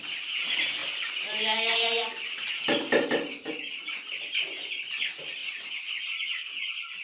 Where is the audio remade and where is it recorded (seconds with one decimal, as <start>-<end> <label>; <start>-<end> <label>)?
0.0-5.4 recorded; 5.4-6.0 remade; 6.0-7.0 recorded